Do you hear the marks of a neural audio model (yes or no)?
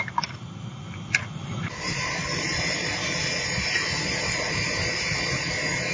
yes